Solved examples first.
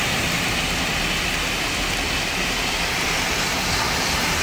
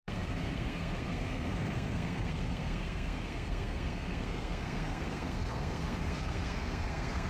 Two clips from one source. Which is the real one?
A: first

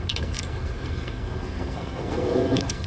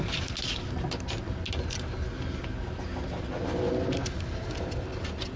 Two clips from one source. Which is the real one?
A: second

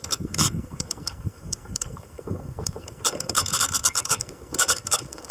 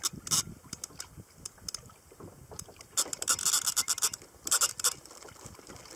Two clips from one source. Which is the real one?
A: second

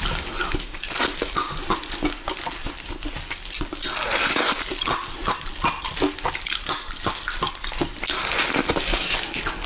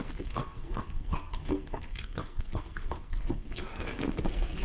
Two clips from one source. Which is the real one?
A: first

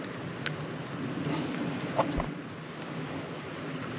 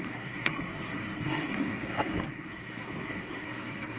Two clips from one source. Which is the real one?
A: first